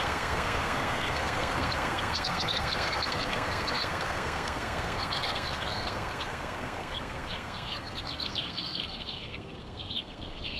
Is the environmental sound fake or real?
fake